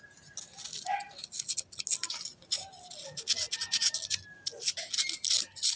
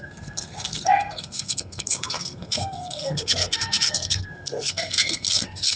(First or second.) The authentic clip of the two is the first